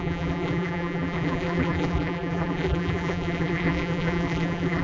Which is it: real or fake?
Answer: fake